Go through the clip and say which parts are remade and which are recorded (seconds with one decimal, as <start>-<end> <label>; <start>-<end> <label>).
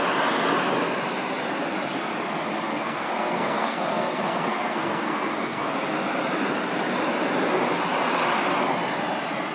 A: 0.0-2.7 recorded; 2.7-5.7 remade; 5.7-9.5 recorded